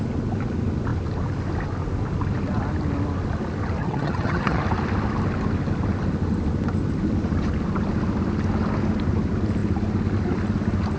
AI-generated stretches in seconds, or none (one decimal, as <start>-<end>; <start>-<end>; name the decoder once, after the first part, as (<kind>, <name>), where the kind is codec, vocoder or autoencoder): 3.8-4.6 (vocoder, HiFi-GAN)